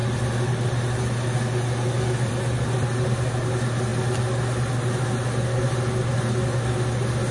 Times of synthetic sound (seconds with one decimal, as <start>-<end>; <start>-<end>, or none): none